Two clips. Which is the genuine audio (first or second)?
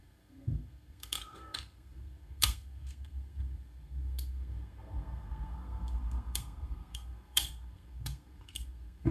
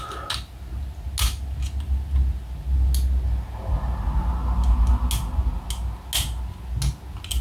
second